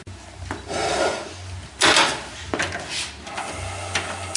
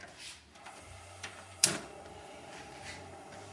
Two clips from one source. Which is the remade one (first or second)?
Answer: second